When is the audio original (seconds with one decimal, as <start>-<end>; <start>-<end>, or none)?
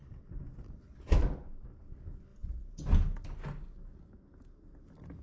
0.0-5.2